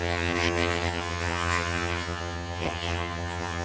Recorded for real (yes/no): no